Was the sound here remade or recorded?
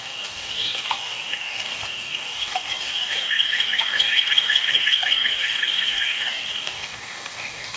remade